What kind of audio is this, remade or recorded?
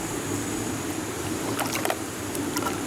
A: remade